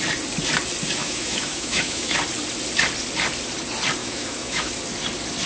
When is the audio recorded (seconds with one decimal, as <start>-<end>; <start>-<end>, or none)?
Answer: 0.0-1.0; 2.2-4.0; 4.7-5.5